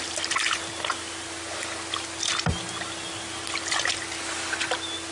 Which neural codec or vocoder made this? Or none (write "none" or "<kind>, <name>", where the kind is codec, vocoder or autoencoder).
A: none